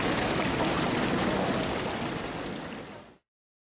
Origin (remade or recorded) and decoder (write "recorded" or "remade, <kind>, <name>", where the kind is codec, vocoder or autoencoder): recorded